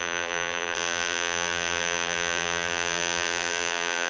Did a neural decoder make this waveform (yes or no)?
yes